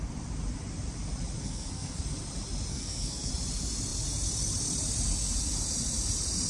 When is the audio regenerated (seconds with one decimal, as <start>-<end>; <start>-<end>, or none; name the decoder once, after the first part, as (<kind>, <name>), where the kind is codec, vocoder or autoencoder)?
1.4-2.0 (codec, SNAC); 2.7-3.3